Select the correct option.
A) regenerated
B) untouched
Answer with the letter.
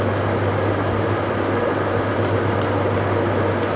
B